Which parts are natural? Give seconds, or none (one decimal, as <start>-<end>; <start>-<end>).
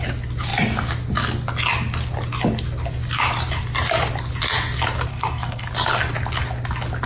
0.0-5.1; 5.7-7.1